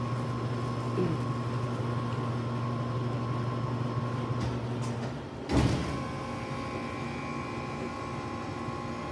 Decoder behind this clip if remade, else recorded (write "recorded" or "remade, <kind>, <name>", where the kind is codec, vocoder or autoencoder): recorded